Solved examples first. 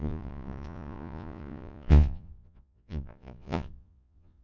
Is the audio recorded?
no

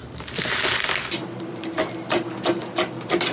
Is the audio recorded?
yes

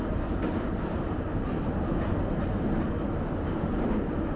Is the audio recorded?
yes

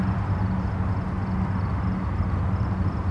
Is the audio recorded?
yes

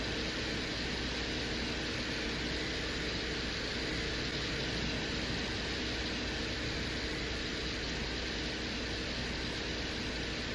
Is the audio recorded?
yes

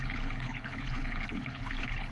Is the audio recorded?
no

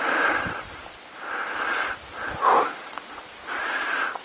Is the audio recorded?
no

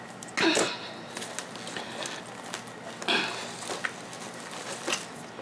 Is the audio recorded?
yes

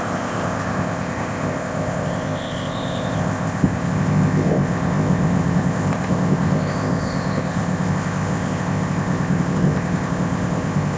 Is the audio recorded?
no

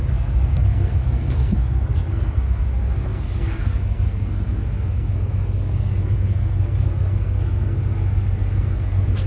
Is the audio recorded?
no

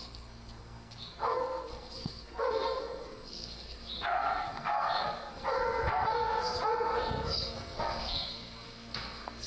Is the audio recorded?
no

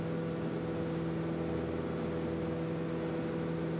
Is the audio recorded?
yes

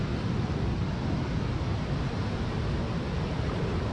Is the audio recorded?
yes